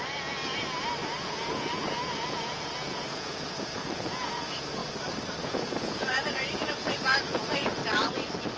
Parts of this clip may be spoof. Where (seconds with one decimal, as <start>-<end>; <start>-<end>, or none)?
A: 0.0-4.8; 5.4-7.8